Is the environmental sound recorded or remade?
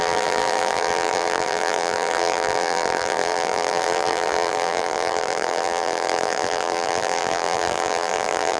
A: remade